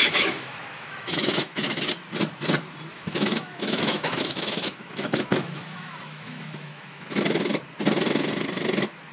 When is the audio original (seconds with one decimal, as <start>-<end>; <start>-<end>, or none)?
1.8-2.9; 7.5-9.1